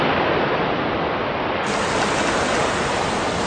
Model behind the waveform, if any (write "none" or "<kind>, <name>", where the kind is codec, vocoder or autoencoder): none